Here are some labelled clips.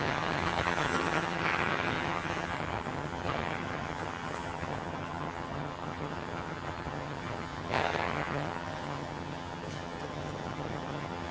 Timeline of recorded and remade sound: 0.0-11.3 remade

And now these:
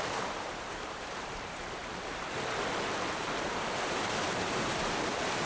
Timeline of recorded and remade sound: 0.0-1.8 remade; 1.8-5.1 recorded; 5.1-5.5 remade

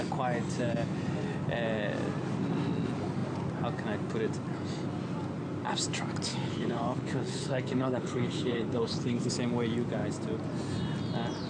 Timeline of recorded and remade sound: 0.0-6.3 recorded; 6.3-9.3 remade; 9.3-11.5 recorded

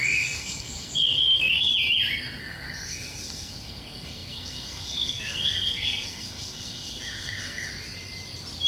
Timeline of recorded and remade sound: 0.0-1.7 remade; 1.7-2.4 recorded; 2.4-7.7 remade; 7.7-8.7 recorded

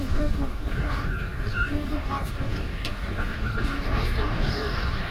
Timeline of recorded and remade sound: 0.0-5.1 remade

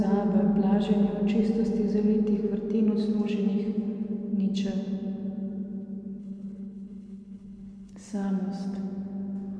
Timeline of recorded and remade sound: 0.0-6.2 recorded; 6.2-7.9 remade; 7.9-9.6 recorded